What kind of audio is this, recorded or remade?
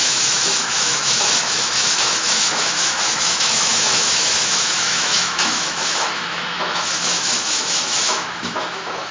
remade